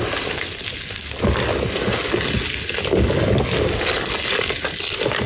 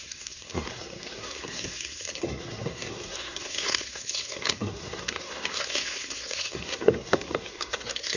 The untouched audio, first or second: first